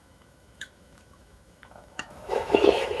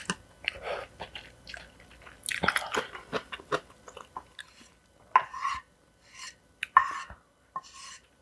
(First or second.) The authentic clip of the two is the second